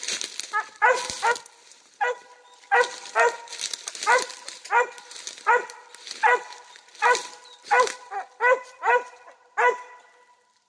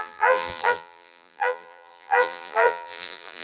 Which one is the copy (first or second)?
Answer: second